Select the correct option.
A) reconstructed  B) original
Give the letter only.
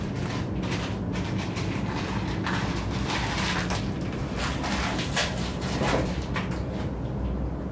B